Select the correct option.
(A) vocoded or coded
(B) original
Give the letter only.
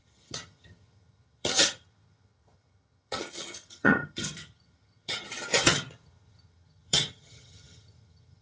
A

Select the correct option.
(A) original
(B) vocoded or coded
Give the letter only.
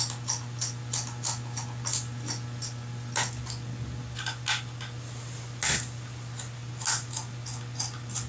A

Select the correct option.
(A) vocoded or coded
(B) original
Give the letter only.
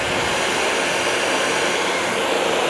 B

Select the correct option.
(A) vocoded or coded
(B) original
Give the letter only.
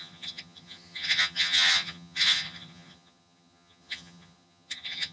A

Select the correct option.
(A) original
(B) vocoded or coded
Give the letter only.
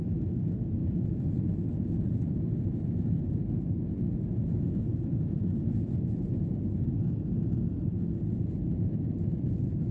A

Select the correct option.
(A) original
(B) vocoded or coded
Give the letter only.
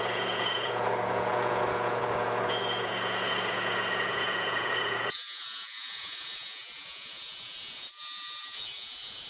B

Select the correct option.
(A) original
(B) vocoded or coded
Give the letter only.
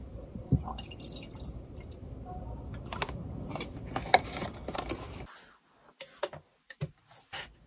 A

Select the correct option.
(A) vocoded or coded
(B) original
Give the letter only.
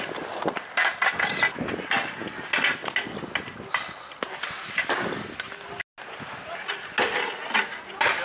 B